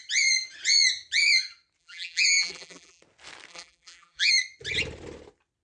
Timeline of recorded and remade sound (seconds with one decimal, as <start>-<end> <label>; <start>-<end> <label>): 0.0-1.8 recorded; 1.8-3.0 remade; 3.0-3.5 recorded; 3.5-4.3 remade; 4.3-5.6 recorded